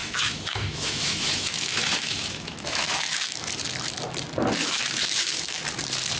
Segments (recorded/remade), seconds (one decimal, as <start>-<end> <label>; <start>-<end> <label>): 0.0-3.5 remade; 3.5-4.6 recorded; 4.6-5.5 remade; 5.5-6.2 recorded